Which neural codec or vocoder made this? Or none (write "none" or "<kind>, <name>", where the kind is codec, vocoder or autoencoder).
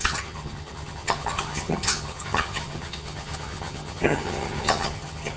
vocoder, HiFi-GAN